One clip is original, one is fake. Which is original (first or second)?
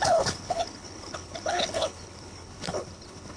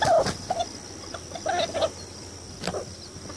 second